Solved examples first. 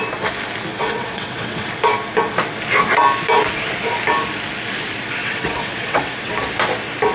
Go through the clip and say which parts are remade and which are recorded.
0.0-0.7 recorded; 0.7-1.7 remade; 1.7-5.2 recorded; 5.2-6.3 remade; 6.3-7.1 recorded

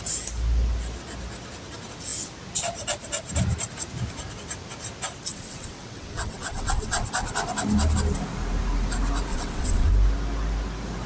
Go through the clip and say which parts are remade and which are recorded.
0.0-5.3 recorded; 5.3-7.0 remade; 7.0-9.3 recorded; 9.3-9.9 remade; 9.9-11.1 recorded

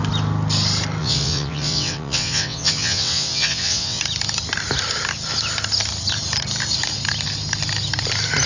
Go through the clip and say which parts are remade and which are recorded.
0.0-1.0 recorded; 1.0-4.0 remade; 4.0-8.5 recorded